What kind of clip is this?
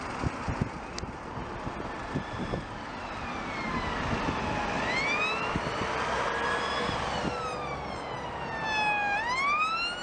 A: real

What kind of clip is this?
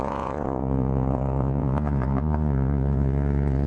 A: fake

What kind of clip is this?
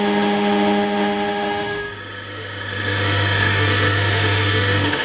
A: fake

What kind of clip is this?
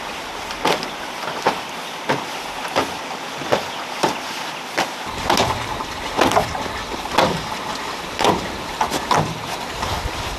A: real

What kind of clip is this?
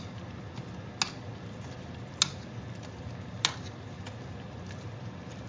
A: real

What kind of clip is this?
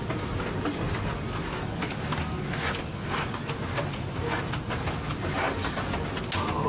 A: real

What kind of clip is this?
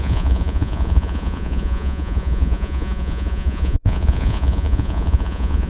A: fake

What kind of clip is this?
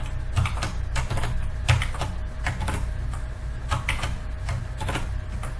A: real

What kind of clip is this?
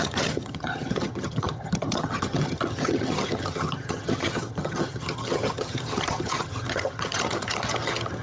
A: fake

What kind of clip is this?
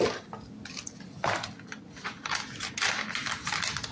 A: real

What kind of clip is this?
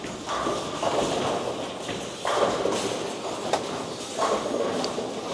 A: real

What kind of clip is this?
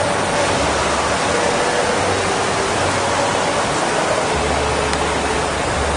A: real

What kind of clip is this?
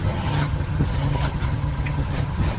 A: fake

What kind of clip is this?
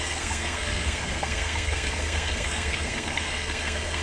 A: fake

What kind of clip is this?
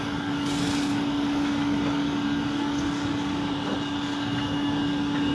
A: fake